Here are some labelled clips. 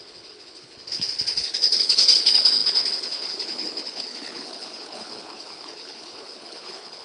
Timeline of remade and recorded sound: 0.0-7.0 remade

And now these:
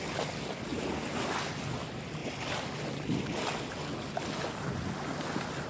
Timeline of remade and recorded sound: 0.0-0.7 recorded; 0.7-1.5 remade; 1.5-5.7 recorded

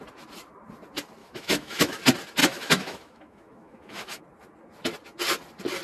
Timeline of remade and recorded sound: 0.0-1.2 recorded; 1.2-2.0 remade; 2.0-2.4 recorded; 2.4-4.2 remade; 4.2-5.8 recorded

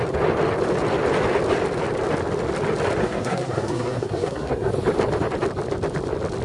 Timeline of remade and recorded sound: 0.0-3.0 recorded; 3.0-4.7 remade; 4.7-6.4 recorded